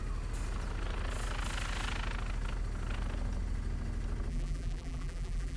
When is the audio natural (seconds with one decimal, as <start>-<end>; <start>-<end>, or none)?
0.0-4.3